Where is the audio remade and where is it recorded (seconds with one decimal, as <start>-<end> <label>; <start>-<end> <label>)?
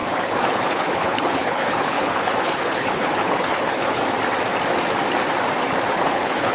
0.0-4.0 remade; 4.0-5.9 recorded; 5.9-6.5 remade